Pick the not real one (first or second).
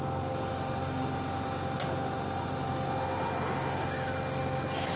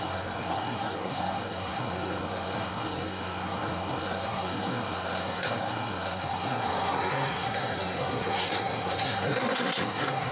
second